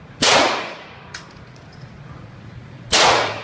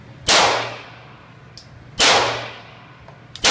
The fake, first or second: first